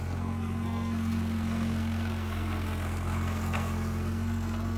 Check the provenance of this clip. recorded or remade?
remade